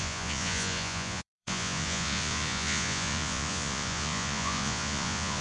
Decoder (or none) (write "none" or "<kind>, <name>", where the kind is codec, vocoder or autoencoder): vocoder, Vocos